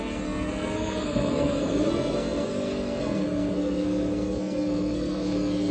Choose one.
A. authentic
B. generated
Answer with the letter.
B